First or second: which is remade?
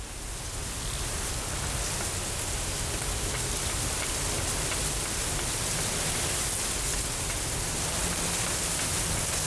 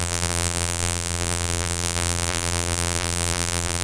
second